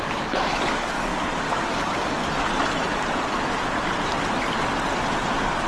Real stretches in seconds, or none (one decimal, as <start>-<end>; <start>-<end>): 1.1-1.7; 2.2-5.7